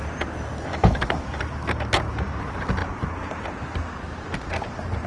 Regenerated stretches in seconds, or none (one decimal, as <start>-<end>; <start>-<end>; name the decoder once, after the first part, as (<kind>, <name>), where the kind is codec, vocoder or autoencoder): 0.7-1.4 (autoencoder, DAC-VAE)